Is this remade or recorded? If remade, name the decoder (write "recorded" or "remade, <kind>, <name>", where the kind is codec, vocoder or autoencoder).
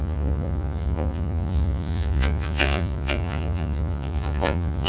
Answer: remade, vocoder, Vocos